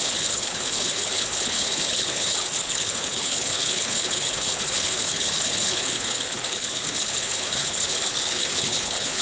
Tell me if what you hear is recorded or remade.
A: remade